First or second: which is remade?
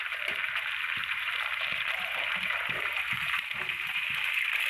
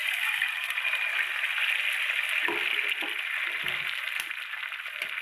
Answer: first